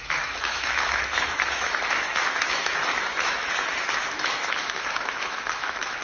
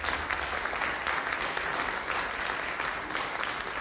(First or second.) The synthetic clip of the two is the first